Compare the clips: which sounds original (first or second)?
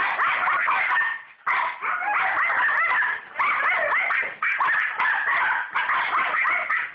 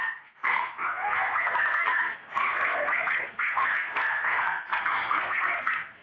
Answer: first